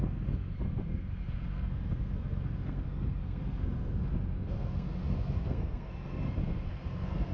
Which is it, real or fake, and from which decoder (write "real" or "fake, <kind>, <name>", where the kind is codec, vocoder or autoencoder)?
fake, codec, SNAC